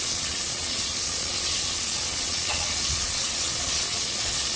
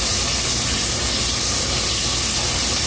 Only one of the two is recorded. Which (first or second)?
second